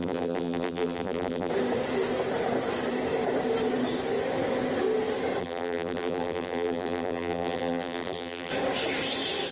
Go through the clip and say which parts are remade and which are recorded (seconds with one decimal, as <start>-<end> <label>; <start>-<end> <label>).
0.0-1.5 remade; 1.5-5.4 recorded; 5.4-8.5 remade; 8.5-9.5 recorded